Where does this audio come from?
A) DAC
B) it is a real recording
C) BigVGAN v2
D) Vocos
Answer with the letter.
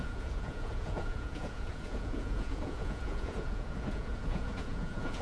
D